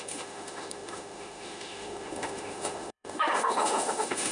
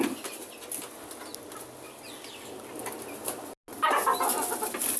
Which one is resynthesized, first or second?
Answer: first